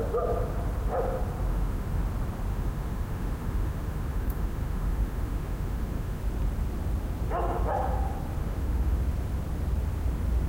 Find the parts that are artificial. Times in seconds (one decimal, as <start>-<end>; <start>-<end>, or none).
1.5-2.0; 2.5-6.2; 8.4-9.0